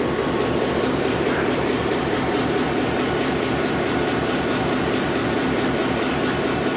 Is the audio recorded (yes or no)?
yes